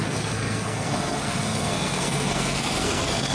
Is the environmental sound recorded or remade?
remade